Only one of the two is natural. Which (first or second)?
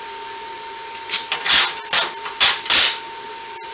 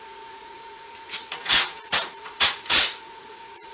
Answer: first